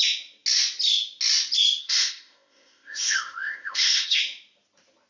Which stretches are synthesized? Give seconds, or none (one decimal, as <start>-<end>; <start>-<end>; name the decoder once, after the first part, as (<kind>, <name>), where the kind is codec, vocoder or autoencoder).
1.8-4.2 (codec, ZipCodec)